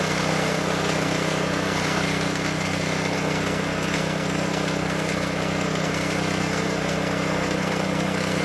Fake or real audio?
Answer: fake